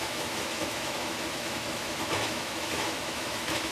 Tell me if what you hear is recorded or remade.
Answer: remade